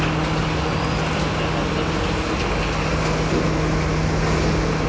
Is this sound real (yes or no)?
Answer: yes